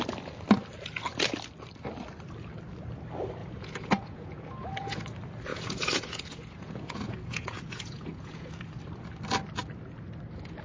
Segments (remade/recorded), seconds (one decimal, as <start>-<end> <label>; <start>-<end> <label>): 0.0-3.4 recorded; 3.4-5.0 remade; 5.0-5.5 recorded; 5.5-8.5 remade; 8.5-10.6 recorded